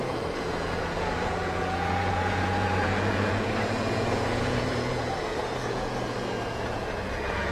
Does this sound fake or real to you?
fake